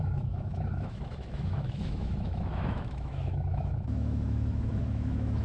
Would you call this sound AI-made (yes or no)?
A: yes